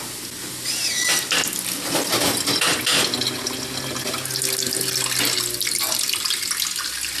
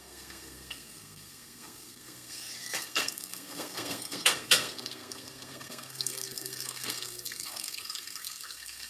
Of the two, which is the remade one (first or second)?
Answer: second